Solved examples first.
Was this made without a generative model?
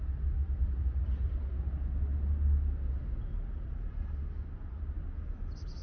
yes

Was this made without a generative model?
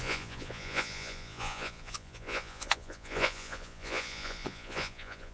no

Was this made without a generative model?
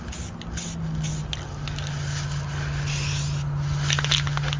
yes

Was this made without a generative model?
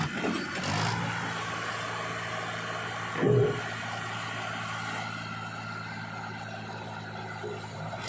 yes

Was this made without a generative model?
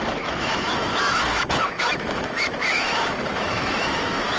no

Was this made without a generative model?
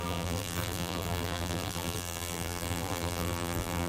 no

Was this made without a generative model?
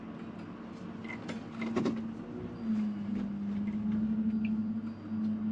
yes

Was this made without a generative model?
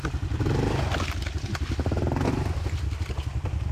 yes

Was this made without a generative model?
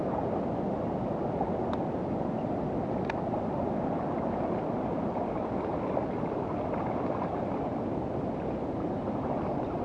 yes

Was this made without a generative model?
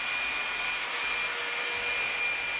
yes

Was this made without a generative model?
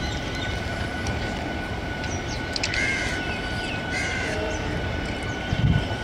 no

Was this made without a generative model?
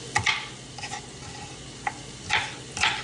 yes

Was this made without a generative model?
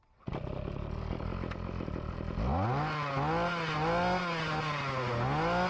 yes